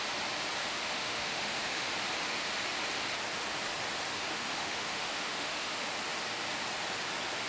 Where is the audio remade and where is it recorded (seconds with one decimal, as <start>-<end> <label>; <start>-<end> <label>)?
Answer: 0.0-0.6 recorded; 0.6-1.9 remade; 1.9-4.1 recorded; 4.1-5.9 remade; 5.9-7.5 recorded